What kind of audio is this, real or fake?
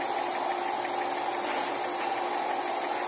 real